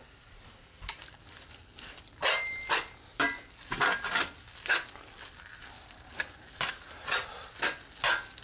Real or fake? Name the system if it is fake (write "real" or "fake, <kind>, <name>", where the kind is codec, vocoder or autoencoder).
real